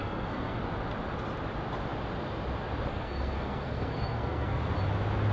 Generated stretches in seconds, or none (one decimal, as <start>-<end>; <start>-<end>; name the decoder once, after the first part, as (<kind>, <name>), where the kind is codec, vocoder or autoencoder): 0.0-0.6 (codec, SNAC); 2.9-4.6